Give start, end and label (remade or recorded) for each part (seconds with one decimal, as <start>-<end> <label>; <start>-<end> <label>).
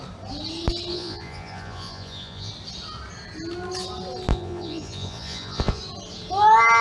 0.0-0.9 recorded; 0.9-2.5 remade; 2.5-4.3 recorded; 4.3-5.8 remade; 5.8-6.8 recorded